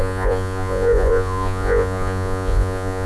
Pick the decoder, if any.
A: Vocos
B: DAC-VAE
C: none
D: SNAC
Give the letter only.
A